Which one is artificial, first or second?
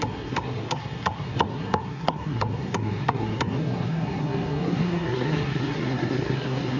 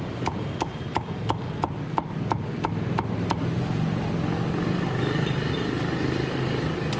first